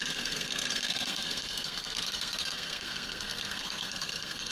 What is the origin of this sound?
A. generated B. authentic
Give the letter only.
A